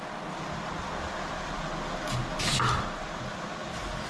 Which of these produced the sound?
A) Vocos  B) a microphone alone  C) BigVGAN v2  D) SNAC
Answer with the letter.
B